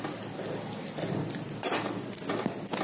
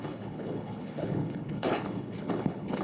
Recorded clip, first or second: first